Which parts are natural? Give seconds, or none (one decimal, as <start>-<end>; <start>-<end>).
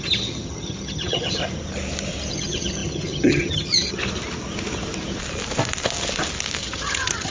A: 1.4-2.3; 4.0-6.6